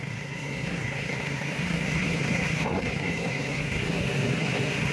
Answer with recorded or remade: remade